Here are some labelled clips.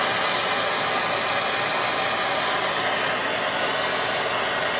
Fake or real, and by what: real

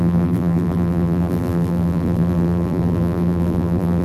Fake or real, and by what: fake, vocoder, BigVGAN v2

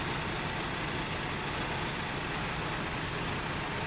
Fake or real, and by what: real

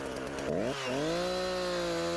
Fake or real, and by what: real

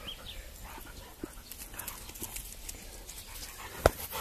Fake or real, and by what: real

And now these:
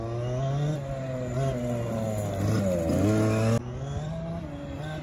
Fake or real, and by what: real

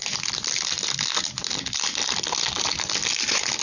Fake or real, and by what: real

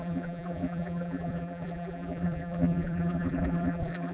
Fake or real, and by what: fake, vocoder, BigVGAN v2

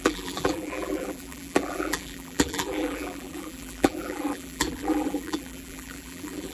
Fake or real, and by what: fake, vocoder, BigVGAN v2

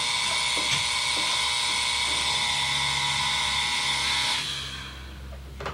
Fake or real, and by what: real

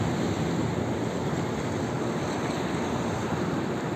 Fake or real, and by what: real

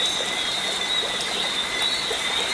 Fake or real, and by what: real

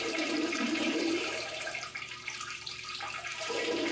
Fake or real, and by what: fake, vocoder, BigVGAN v2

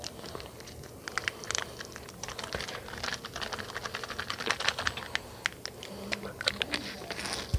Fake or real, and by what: real